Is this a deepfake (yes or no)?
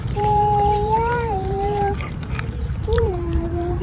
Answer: yes